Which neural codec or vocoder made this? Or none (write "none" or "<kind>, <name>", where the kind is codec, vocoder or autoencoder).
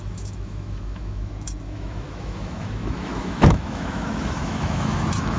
autoencoder, DAC-VAE